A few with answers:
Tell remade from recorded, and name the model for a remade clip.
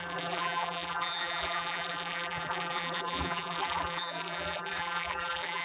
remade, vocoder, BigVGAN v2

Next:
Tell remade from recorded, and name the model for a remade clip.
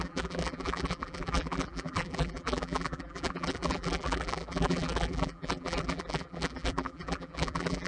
remade, vocoder, BigVGAN v2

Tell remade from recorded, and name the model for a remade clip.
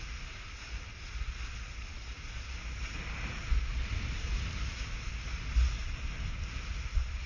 recorded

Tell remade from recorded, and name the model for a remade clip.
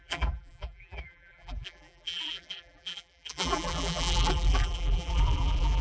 remade, vocoder, BigVGAN v2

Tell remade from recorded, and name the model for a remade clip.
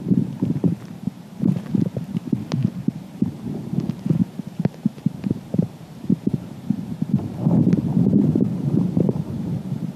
remade, vocoder, BigVGAN v2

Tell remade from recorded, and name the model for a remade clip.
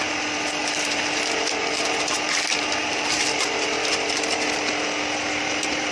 remade, vocoder, BigVGAN v2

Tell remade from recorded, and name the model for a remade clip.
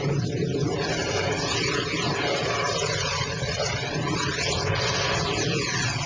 recorded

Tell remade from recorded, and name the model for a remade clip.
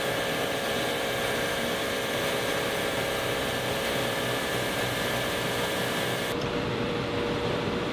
remade, vocoder, BigVGAN v2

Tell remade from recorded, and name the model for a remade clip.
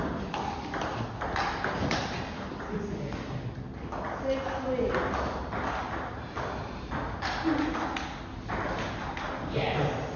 recorded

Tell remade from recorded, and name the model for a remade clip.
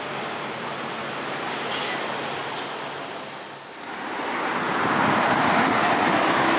recorded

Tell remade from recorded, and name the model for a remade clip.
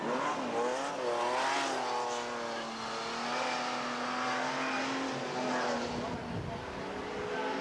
recorded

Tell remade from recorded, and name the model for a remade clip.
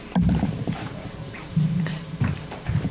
remade, vocoder, BigVGAN v2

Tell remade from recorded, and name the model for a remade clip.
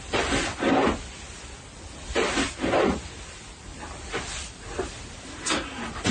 remade, vocoder, BigVGAN v2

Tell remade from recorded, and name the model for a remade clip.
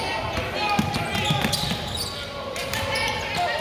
recorded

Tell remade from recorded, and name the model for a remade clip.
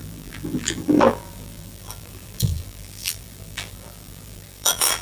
remade, vocoder, BigVGAN v2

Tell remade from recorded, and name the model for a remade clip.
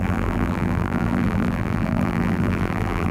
remade, vocoder, BigVGAN v2